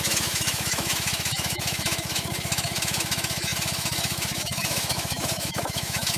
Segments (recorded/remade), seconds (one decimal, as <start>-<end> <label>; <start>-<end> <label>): 0.0-6.2 remade

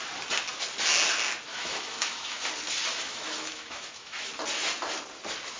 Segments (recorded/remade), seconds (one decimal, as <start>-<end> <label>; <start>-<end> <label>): 0.0-1.5 recorded; 1.5-2.4 remade; 2.4-2.9 recorded; 2.9-4.3 remade; 4.3-5.6 recorded

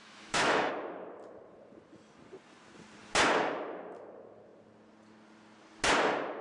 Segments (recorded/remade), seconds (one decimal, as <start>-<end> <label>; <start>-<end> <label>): 0.0-0.7 remade; 0.7-6.4 recorded

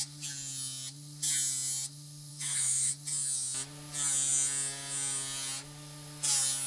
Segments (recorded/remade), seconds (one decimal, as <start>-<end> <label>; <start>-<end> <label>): 0.0-2.3 recorded; 2.3-2.9 remade; 2.9-6.7 recorded

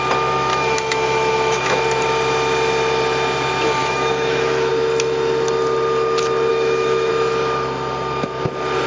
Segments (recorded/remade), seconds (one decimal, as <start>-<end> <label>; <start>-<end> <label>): 0.0-0.5 recorded; 0.5-1.8 remade; 1.8-3.8 recorded; 3.8-4.7 remade; 4.7-6.5 recorded; 6.5-7.1 remade; 7.1-8.9 recorded

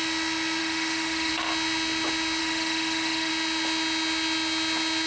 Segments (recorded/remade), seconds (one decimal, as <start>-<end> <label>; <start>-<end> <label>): 0.0-0.6 recorded; 0.6-1.3 remade; 1.3-2.4 recorded; 2.4-3.3 remade; 3.3-5.1 recorded

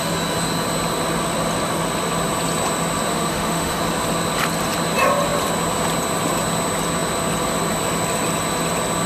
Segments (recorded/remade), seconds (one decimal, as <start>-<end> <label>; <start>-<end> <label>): 0.0-3.1 recorded; 3.1-3.8 remade; 3.8-9.1 recorded

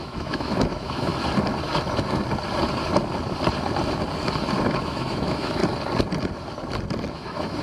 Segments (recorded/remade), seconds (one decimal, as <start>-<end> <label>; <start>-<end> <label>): 0.0-1.1 remade; 1.1-4.6 recorded; 4.6-5.6 remade; 5.6-7.1 recorded; 7.1-7.6 remade